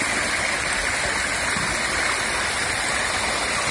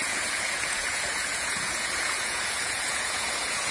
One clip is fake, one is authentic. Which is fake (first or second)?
second